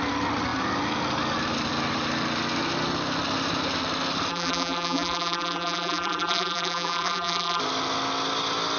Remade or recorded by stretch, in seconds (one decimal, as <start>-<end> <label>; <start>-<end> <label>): 0.0-4.3 recorded; 4.3-7.6 remade; 7.6-8.8 recorded